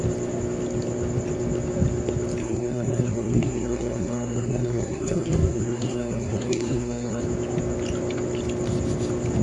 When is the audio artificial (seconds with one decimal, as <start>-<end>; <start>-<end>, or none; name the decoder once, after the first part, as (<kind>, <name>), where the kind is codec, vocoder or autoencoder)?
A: 2.4-7.2 (codec, SNAC)